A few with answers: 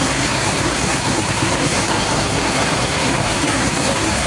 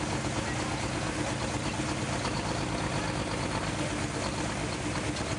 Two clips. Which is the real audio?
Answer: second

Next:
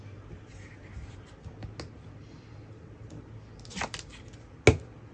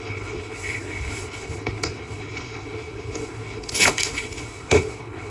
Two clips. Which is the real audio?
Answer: first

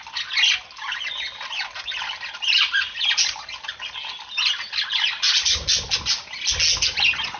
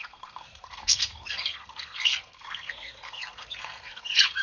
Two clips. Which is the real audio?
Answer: first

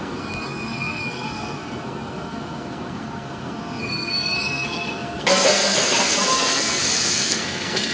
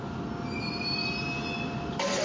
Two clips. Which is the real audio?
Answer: second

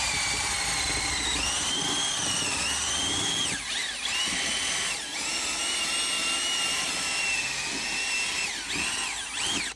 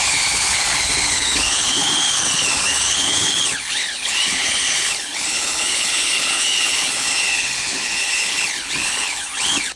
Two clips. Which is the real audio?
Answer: first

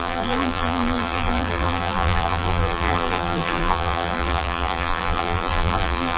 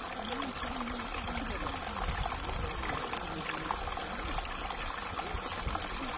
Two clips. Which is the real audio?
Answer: second